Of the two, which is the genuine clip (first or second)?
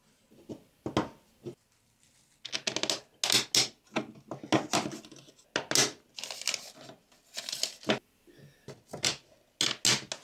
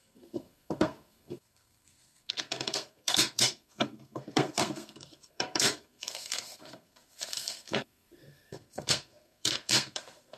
first